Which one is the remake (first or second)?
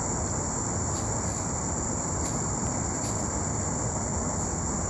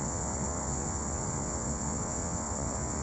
second